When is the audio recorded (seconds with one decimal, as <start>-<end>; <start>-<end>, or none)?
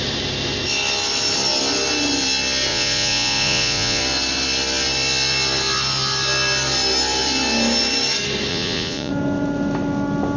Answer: 0.0-2.7; 4.0-8.5; 9.1-10.4